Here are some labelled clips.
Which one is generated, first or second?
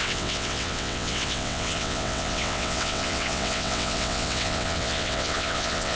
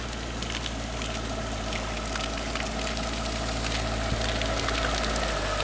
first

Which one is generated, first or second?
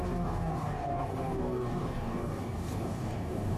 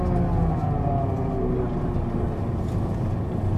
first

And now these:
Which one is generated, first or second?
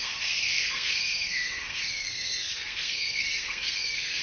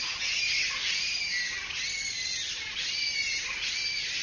first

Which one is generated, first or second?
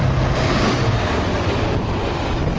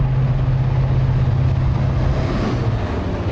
first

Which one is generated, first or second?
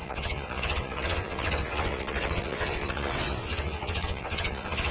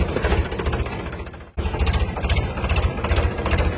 first